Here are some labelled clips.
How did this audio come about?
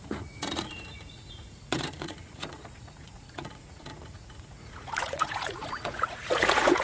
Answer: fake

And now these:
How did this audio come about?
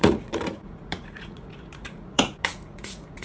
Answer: fake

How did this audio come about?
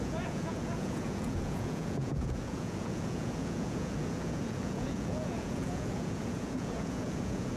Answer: fake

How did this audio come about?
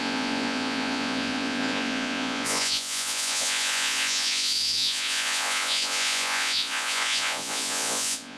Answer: fake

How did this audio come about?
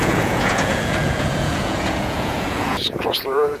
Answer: fake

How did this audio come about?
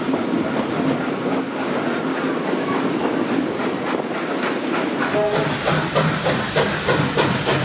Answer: real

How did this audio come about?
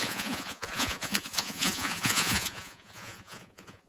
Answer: fake